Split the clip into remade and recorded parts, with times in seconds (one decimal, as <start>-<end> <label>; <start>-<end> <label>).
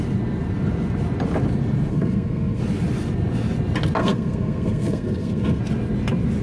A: 0.0-1.9 recorded; 1.9-2.6 remade; 2.6-4.0 recorded; 4.0-5.6 remade; 5.6-6.4 recorded